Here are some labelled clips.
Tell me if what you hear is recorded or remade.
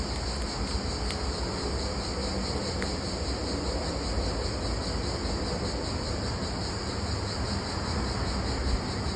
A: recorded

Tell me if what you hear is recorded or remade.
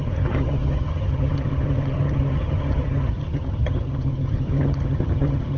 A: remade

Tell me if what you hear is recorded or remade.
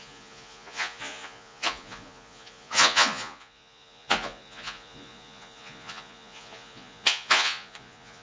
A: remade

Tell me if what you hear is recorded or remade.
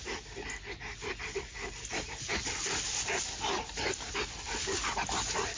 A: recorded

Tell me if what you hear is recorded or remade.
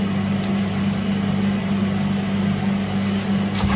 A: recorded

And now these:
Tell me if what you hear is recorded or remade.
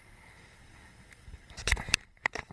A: remade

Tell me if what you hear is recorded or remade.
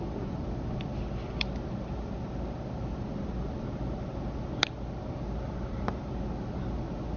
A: recorded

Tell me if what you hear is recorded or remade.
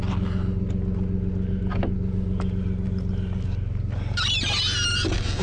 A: recorded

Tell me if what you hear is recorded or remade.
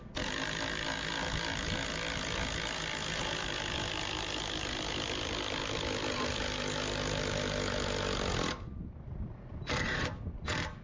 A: recorded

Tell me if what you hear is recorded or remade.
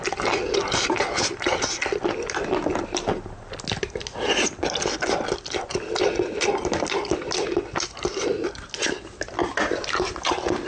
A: recorded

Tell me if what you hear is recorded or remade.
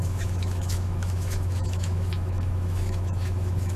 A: remade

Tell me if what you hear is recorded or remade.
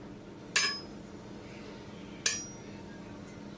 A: recorded